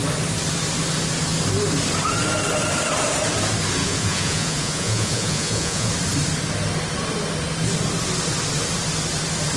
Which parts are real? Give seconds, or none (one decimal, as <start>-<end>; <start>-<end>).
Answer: 0.0-3.8; 5.9-9.6